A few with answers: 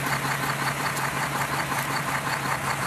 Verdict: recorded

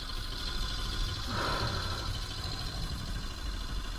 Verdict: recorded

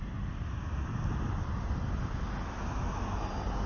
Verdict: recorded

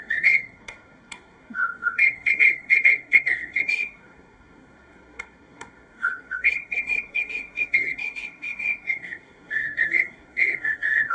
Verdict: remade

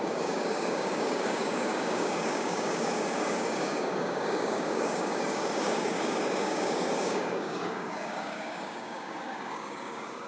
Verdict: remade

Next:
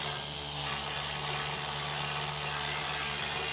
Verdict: recorded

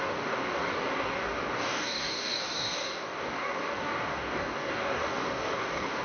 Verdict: remade